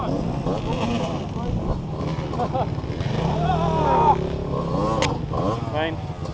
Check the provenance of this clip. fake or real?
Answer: real